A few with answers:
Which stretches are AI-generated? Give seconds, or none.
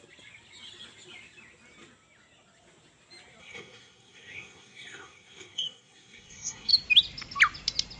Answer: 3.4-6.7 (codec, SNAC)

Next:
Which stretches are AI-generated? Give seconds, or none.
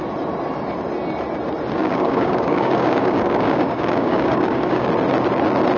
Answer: 1.8-4.9 (codec, DAC)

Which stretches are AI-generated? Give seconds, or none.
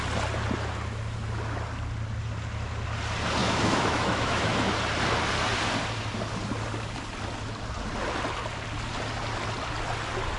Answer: 3.4-4.7 (autoencoder, DAC-VAE)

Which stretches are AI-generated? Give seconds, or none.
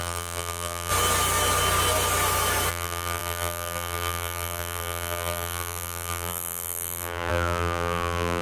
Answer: 0.0-0.9 (vocoder, BigVGAN v2); 2.7-8.4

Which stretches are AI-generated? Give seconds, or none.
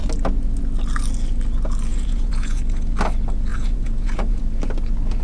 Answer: 1.9-2.9 (vocoder, Vocos); 3.5-4.4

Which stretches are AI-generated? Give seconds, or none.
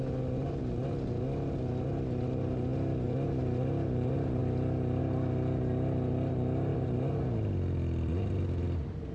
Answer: 4.4-5.0 (vocoder, BigVGAN v2); 6.7-8.4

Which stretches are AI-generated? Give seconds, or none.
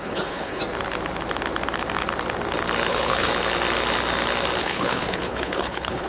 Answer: 0.0-0.6 (codec, HILCodec); 2.9-3.3; 4.6-6.1